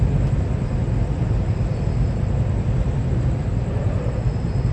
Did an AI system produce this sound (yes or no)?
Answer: no